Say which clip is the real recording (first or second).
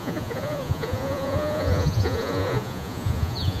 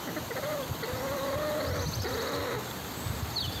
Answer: second